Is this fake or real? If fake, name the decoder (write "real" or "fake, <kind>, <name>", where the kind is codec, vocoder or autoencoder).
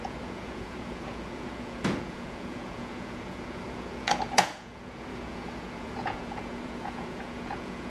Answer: fake, vocoder, Vocos